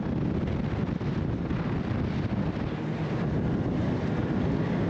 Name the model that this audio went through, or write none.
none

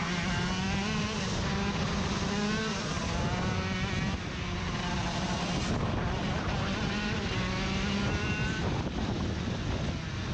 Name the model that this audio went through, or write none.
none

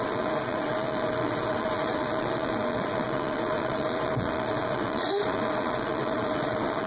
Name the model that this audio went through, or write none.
vocoder, Vocos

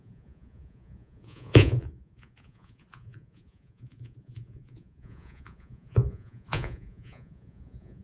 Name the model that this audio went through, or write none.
vocoder, Vocos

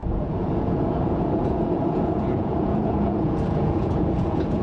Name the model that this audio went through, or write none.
vocoder, Vocos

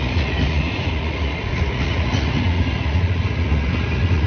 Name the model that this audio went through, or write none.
vocoder, Vocos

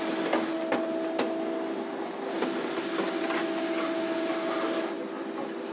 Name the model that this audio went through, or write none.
none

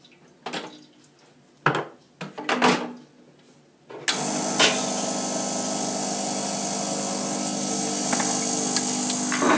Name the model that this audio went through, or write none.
none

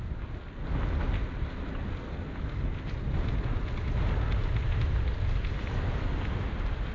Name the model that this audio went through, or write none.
none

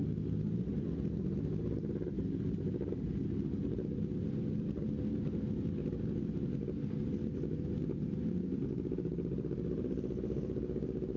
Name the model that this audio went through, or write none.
none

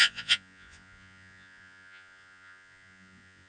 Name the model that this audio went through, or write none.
vocoder, Vocos